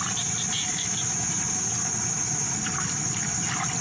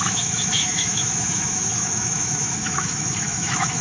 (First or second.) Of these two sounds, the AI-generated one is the second